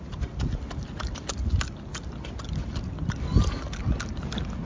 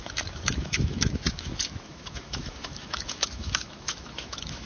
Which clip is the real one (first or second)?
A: first